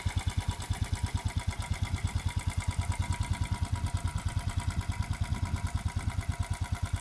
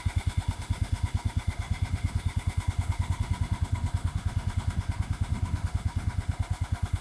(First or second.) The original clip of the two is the first